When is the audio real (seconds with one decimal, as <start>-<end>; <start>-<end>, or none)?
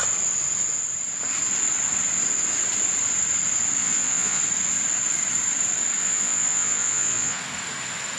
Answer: 0.0-3.8; 4.4-6.0; 7.4-8.2